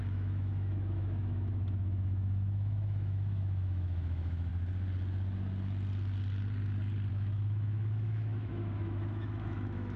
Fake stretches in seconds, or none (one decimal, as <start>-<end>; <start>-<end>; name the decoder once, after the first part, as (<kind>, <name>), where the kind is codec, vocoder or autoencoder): 0.0-4.5 (autoencoder, DAC-VAE); 7.1-10.0